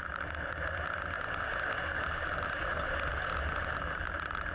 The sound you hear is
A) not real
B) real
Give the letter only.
B